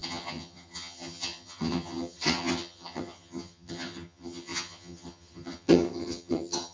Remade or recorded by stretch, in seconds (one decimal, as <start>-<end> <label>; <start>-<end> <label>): 0.0-6.7 remade